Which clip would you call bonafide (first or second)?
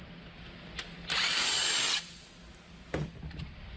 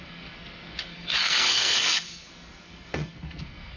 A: first